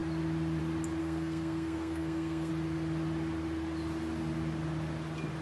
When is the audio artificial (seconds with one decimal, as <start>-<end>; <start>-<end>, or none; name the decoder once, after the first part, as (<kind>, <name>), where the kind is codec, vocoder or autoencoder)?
1.0-2.5 (codec, SNAC)